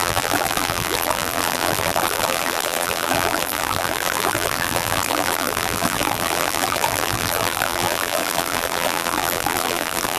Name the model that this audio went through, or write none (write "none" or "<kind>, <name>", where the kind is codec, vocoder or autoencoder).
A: vocoder, BigVGAN v2